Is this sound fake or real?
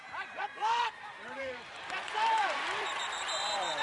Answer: fake